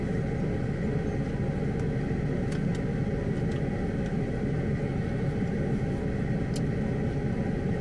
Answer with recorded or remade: recorded